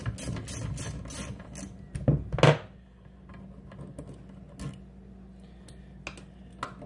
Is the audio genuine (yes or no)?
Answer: yes